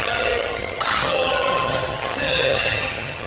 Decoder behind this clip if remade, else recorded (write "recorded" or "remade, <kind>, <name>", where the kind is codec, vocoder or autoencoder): remade, vocoder, HiFi-GAN